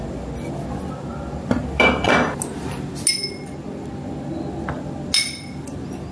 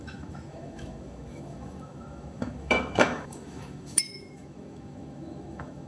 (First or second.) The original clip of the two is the first